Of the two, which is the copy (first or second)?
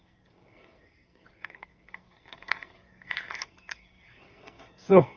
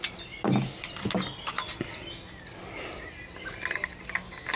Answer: first